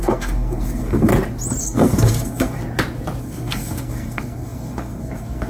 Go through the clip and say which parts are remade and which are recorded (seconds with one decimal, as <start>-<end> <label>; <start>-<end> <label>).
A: 0.0-1.1 remade; 1.1-1.6 recorded; 1.6-2.6 remade; 2.6-3.2 recorded; 3.2-5.5 remade